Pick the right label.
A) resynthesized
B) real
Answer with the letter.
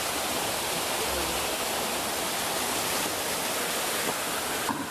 B